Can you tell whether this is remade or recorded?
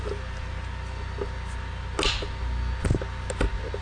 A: recorded